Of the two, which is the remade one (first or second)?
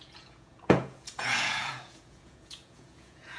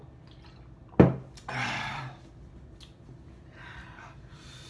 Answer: first